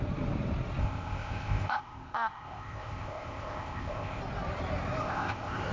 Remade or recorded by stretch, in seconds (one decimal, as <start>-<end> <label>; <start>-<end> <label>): 0.0-0.8 recorded; 0.8-4.2 remade; 4.2-5.0 recorded; 5.0-5.7 remade